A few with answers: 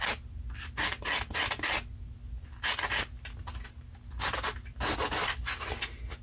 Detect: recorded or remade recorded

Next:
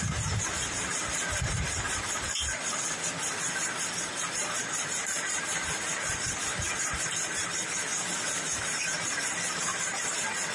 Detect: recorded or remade remade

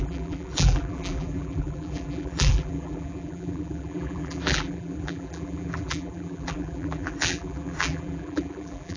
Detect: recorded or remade remade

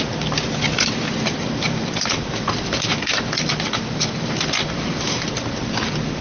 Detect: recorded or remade recorded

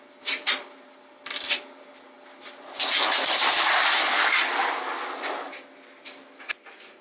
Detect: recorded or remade remade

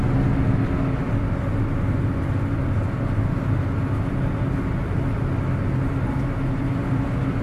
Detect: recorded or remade recorded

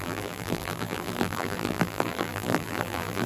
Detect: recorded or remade remade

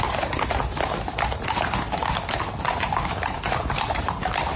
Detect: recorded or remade remade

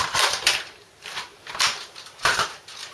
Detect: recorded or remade remade